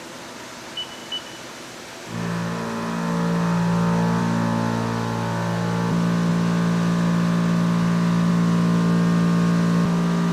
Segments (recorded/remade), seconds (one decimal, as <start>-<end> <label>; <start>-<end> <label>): 0.0-10.3 recorded